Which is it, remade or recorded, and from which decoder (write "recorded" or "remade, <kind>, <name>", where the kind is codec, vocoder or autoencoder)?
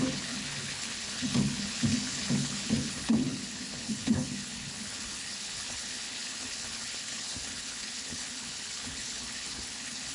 remade, codec, HILCodec